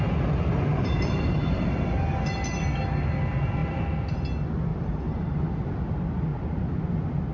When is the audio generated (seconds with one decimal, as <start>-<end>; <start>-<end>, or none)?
0.7-1.7; 3.6-4.1; 4.7-5.4; 6.3-6.8